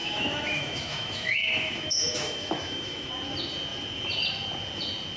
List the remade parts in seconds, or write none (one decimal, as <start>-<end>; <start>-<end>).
0.0-3.1